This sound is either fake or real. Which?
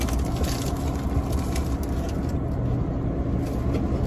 real